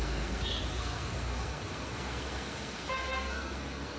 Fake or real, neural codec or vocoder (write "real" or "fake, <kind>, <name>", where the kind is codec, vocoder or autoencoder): fake, codec, SNAC